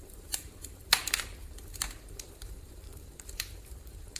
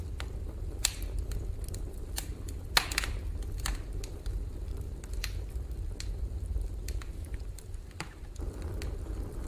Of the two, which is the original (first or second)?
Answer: second